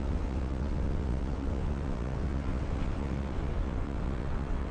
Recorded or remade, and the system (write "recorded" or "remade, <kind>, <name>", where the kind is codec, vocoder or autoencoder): remade, vocoder, WaveNeXt